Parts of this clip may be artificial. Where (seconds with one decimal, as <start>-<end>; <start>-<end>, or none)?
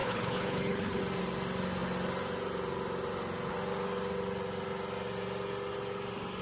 0.0-1.0